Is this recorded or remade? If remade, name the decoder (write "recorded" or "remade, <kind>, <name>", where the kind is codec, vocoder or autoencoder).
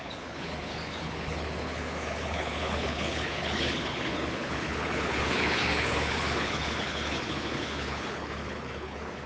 remade, codec, HILCodec